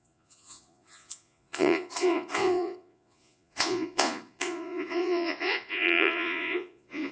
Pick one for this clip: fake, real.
fake